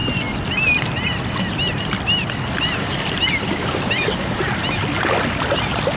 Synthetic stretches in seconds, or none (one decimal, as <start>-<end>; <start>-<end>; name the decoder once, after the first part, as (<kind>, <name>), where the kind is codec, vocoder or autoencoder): none